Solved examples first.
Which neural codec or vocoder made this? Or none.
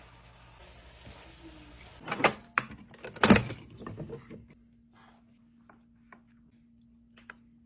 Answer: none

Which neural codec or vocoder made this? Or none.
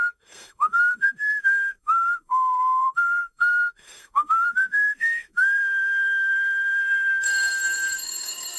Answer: codec, SNAC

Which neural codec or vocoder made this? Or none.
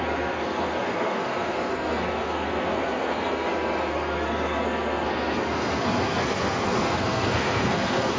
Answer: codec, SNAC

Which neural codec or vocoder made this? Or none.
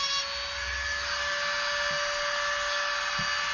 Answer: none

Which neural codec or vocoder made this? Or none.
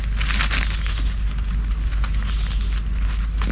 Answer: none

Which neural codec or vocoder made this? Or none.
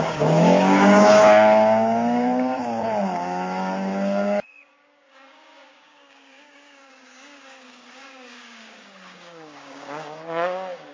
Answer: codec, DAC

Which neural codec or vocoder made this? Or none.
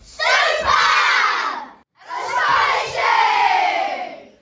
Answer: vocoder, Vocos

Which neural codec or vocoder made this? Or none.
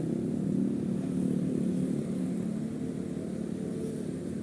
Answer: none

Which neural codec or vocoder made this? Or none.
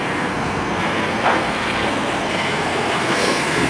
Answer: codec, SNAC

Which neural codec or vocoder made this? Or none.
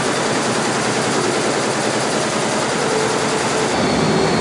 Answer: none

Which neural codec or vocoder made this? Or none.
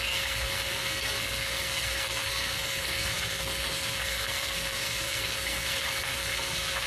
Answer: codec, SNAC